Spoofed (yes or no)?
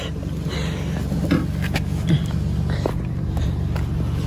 no